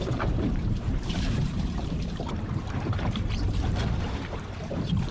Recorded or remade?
remade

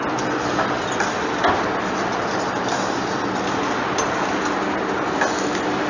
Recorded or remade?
recorded